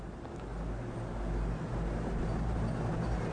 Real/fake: real